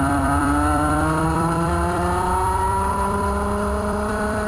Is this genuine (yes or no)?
no